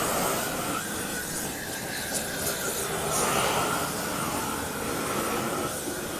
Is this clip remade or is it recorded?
recorded